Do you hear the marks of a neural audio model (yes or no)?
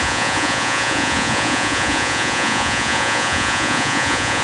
yes